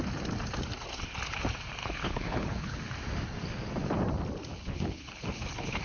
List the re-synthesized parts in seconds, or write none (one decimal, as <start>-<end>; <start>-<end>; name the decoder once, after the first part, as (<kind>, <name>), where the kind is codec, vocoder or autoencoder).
1.8-2.8 (codec, HILCodec); 4.5-5.8